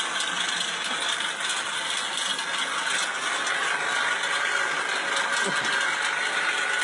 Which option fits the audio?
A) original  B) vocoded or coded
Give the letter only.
A